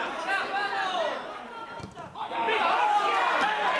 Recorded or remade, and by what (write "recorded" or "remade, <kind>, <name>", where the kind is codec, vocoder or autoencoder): recorded